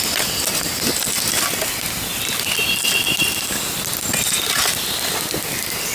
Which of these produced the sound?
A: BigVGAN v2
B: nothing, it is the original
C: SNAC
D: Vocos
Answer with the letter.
B